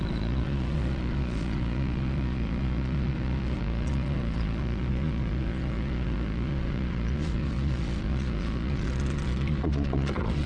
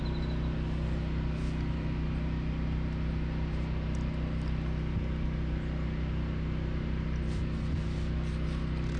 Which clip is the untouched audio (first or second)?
second